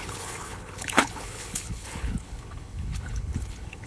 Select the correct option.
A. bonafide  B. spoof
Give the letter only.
B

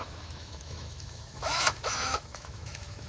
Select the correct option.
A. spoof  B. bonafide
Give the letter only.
A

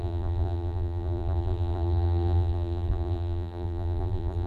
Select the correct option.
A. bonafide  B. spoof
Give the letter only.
B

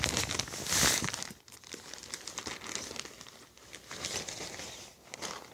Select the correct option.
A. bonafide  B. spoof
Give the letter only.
A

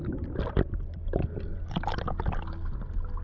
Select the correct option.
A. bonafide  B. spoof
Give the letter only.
A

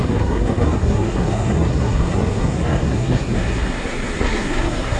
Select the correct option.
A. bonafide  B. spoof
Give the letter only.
B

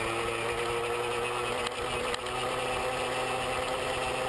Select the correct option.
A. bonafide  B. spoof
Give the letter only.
A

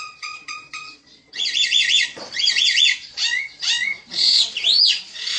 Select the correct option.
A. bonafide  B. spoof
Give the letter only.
B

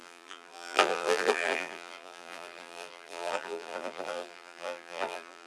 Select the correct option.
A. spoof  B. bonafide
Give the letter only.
A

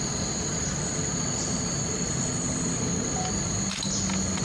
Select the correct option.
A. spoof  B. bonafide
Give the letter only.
B